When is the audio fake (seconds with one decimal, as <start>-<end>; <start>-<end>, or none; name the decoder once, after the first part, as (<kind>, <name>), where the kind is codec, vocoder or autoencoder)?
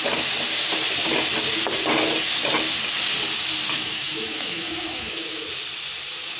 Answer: 3.6-5.5 (autoencoder, DAC-VAE)